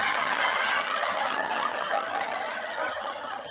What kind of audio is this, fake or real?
fake